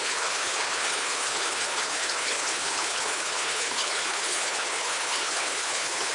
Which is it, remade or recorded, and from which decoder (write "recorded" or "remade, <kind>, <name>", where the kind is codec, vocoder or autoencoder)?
remade, codec, HILCodec